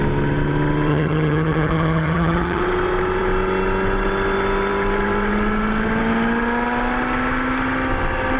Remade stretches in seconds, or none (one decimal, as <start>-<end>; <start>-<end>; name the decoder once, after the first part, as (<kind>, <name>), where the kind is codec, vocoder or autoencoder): 0.9-2.6 (vocoder, HiFi-GAN)